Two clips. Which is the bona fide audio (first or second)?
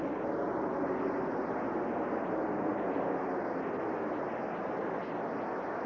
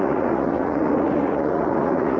first